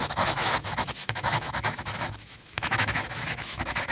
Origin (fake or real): fake